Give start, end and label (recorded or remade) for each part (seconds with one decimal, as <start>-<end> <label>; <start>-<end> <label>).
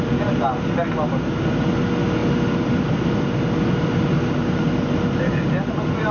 0.0-6.1 recorded